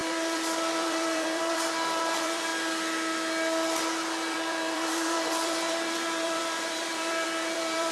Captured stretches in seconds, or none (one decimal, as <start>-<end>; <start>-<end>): 2.5-4.3